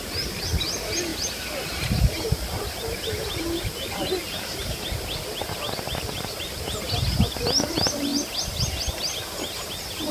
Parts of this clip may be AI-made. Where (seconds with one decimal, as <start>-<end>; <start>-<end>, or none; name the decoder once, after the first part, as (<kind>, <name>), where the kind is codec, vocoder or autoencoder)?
none